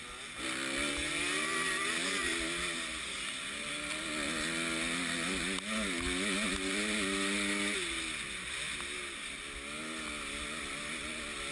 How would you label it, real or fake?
real